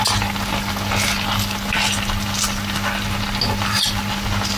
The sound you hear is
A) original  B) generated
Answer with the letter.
A